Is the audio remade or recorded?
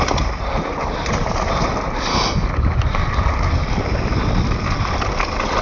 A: recorded